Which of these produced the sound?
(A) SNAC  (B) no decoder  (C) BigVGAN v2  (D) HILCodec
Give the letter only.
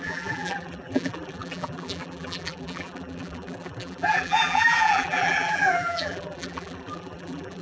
C